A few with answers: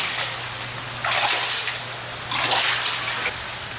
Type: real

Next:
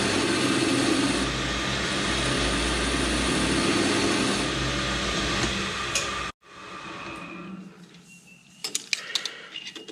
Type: real